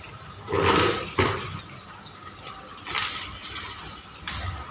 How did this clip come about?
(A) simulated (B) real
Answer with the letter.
B